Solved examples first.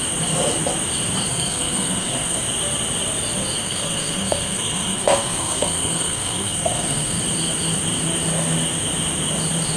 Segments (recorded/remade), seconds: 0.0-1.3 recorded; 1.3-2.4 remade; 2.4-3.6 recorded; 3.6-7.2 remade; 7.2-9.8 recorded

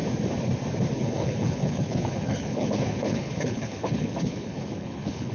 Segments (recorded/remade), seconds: 0.0-0.9 recorded; 0.9-5.3 remade

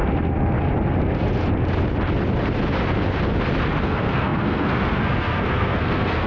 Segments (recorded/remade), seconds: 0.0-3.8 recorded; 3.8-6.3 remade

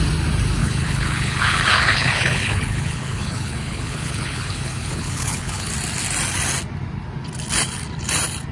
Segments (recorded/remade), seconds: 0.0-0.6 recorded; 0.6-5.7 remade; 5.7-8.5 recorded

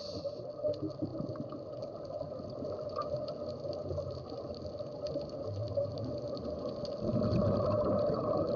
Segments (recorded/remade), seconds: 0.0-8.6 recorded

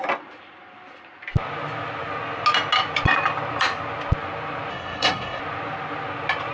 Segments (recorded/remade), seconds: 0.0-4.7 recorded; 4.7-5.4 remade; 5.4-6.5 recorded